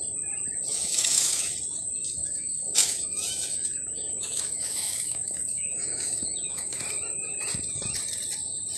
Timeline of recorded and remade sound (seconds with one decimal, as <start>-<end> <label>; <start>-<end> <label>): 0.0-0.7 recorded; 0.7-1.5 remade; 1.5-2.2 recorded; 2.2-6.8 remade; 6.8-8.8 recorded